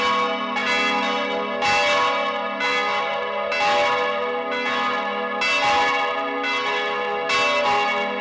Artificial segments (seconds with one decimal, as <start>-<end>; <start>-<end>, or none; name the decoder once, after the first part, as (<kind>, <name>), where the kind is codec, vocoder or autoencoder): none